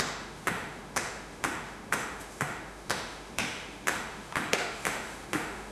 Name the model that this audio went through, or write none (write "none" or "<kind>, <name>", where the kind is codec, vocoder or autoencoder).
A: autoencoder, DAC-VAE